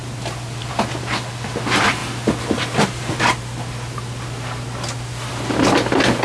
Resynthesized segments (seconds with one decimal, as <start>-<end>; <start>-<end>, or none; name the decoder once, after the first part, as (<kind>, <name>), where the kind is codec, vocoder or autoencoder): none